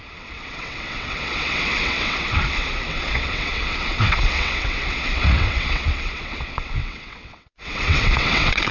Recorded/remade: remade